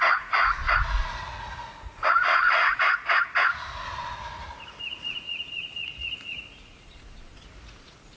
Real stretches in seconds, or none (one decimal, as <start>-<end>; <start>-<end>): none